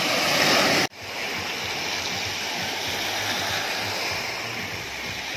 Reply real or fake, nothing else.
real